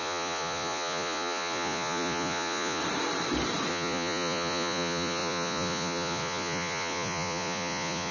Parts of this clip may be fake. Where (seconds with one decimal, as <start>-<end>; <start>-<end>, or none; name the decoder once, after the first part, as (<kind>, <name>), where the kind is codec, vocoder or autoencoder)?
0.0-2.8 (vocoder, Vocos); 3.7-8.1